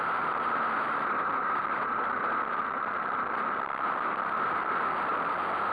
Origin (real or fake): real